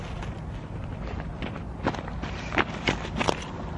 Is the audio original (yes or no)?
yes